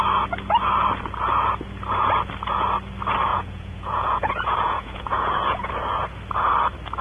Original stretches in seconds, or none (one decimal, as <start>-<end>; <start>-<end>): 0.0-3.3; 5.7-7.0